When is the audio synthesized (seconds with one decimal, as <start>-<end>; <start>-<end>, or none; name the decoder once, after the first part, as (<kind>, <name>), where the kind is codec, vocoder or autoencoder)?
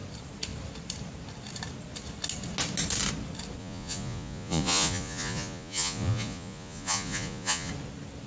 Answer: 3.6-7.7 (vocoder, Vocos)